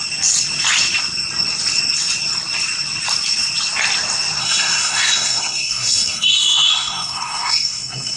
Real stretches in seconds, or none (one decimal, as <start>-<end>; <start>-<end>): 0.0-4.4